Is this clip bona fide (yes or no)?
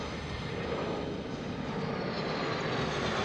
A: yes